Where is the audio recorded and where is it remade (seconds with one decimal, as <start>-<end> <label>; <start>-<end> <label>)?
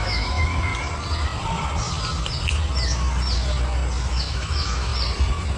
0.0-0.7 remade; 0.7-4.1 recorded; 4.1-4.9 remade; 4.9-5.6 recorded